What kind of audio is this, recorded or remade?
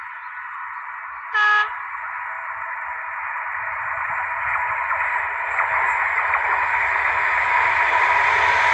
recorded